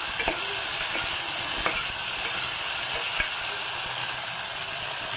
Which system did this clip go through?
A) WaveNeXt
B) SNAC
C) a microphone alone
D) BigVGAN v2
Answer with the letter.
C